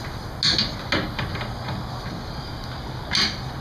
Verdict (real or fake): real